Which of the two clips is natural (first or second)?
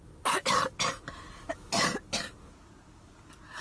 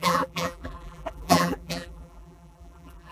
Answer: first